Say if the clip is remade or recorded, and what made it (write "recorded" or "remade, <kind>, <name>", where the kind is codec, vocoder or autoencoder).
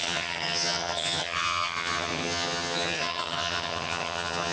remade, vocoder, HiFi-GAN